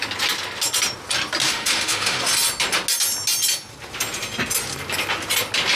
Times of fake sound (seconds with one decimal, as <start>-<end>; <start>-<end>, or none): 1.4-2.2